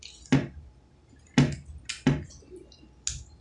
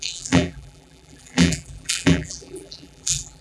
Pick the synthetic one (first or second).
second